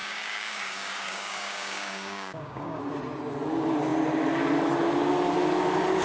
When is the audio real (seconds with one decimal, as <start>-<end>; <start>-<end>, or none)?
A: 2.8-6.0